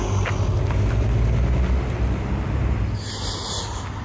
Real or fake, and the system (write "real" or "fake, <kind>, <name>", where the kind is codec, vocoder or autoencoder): real